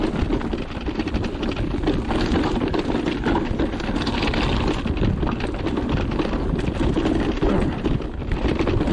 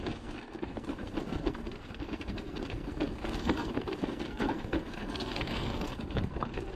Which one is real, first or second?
first